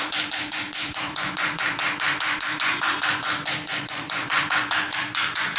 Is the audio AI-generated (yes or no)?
yes